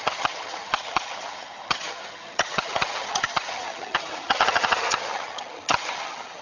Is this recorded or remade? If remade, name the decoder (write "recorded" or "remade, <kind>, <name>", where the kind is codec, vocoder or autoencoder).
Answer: remade, vocoder, HiFi-GAN